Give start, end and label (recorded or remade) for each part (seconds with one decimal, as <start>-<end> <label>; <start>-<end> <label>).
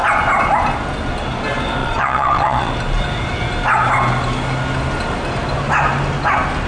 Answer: 0.0-1.8 recorded; 1.8-2.7 remade; 2.7-6.7 recorded